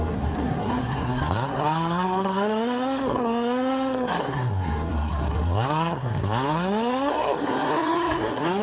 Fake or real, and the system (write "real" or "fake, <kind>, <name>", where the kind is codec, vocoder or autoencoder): fake, codec, SNAC